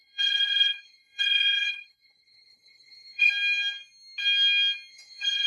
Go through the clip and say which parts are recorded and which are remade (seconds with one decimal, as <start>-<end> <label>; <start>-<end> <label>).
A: 0.0-3.3 remade; 3.3-4.9 recorded; 4.9-5.5 remade

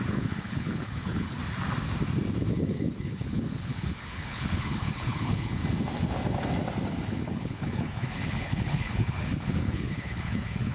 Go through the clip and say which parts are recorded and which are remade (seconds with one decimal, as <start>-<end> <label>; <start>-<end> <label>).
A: 0.0-1.4 remade; 1.4-2.5 recorded; 2.5-5.6 remade; 5.6-7.1 recorded; 7.1-10.7 remade

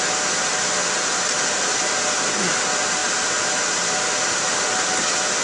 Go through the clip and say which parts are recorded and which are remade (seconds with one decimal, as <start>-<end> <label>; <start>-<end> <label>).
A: 0.0-5.4 recorded

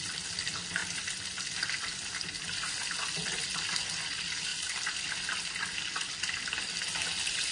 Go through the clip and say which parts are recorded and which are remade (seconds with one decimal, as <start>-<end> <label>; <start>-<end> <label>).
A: 0.0-7.5 recorded

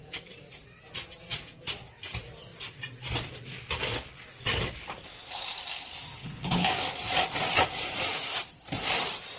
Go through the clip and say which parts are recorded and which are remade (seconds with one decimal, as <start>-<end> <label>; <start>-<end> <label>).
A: 0.0-6.1 recorded; 6.1-6.7 remade; 6.7-9.4 recorded